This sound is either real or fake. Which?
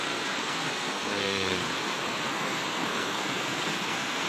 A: fake